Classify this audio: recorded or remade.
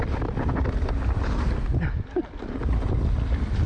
recorded